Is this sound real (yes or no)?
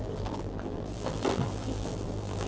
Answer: no